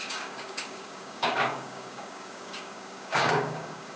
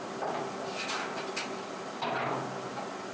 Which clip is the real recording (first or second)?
second